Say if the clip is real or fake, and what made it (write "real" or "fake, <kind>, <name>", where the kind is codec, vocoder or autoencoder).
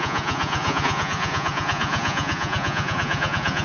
fake, vocoder, Vocos